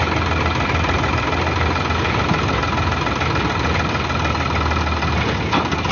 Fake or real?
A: real